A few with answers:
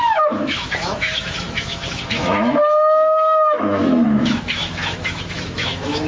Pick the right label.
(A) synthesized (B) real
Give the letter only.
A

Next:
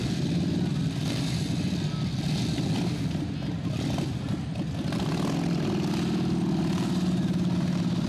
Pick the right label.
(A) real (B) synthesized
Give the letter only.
A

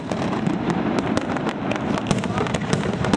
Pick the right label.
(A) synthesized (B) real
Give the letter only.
B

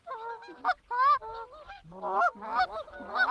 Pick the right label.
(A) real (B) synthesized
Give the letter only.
A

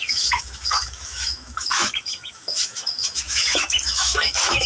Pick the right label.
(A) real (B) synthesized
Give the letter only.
B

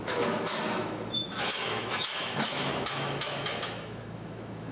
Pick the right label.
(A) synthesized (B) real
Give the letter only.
A